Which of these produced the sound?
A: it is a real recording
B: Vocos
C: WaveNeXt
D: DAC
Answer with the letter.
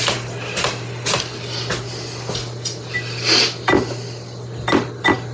A